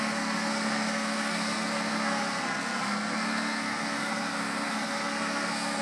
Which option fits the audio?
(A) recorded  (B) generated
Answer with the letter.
B